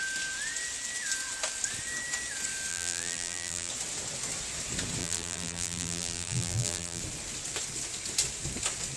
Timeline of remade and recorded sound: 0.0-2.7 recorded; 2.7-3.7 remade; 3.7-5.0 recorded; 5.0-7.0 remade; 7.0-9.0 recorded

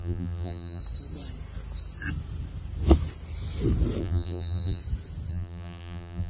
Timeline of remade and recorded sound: 0.0-0.8 remade; 0.8-4.0 recorded; 4.0-4.8 remade; 4.8-5.3 recorded; 5.3-6.3 remade

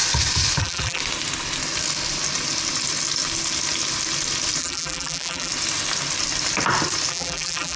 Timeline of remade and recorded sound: 0.0-0.6 recorded; 0.6-1.0 remade; 1.0-4.6 recorded; 4.6-5.5 remade; 5.5-7.1 recorded; 7.1-7.8 remade

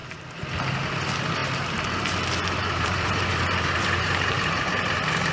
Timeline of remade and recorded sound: 0.0-1.4 recorded; 1.4-4.6 remade; 4.6-5.3 recorded